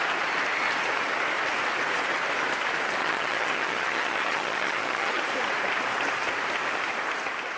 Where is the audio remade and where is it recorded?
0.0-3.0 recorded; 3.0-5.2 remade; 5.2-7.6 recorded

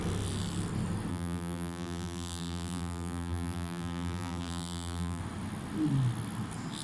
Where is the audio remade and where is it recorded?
0.0-1.1 recorded; 1.1-5.2 remade; 5.2-6.8 recorded

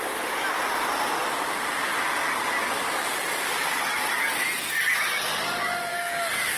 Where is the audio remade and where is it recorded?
0.0-5.9 recorded; 5.9-6.6 remade

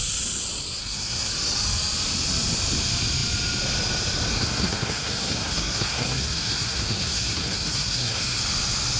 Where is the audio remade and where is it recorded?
0.0-0.8 recorded; 0.8-1.3 remade; 1.3-4.3 recorded; 4.3-8.4 remade; 8.4-9.0 recorded

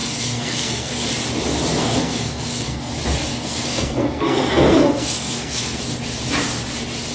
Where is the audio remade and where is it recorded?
0.0-1.1 remade; 1.1-1.8 recorded; 1.8-2.9 remade; 2.9-3.3 recorded; 3.3-5.8 remade; 5.8-7.1 recorded

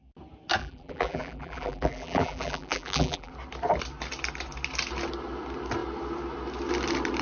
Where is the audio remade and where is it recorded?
0.0-0.6 recorded; 0.6-3.3 remade; 3.3-7.2 recorded

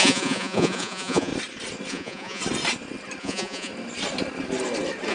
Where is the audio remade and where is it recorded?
0.0-1.3 remade; 1.3-1.9 recorded; 1.9-2.4 remade; 2.4-3.2 recorded; 3.2-3.7 remade; 3.7-5.1 recorded